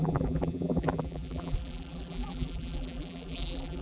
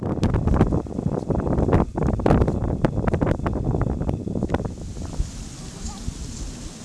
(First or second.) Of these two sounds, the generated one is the first